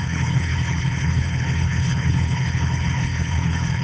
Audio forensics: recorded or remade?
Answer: remade